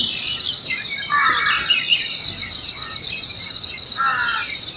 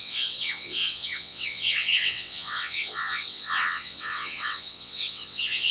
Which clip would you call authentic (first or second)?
first